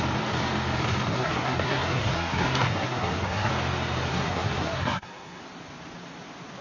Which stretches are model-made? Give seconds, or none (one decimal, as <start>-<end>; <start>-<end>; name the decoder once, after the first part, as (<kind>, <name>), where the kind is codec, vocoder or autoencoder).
1.1-3.5 (codec, SNAC); 4.1-5.4

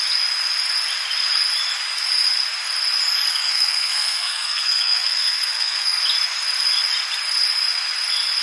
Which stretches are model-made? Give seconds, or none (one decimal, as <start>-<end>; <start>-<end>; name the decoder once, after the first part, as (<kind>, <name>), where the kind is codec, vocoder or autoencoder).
3.3-6.0 (codec, SNAC)